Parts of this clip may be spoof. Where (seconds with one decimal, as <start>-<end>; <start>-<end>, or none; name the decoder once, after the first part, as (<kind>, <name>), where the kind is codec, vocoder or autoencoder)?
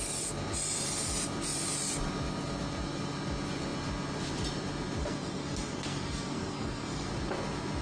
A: 5.0-7.1 (codec, SNAC)